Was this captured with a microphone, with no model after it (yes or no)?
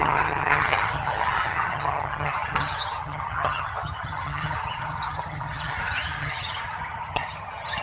no